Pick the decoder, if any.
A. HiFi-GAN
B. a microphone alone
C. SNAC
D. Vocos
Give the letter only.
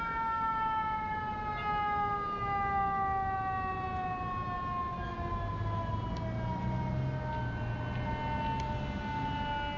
B